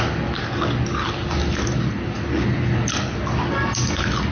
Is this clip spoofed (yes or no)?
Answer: no